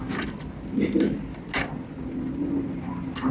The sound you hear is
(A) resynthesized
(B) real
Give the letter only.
B